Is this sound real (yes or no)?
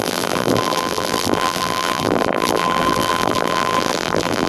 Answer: no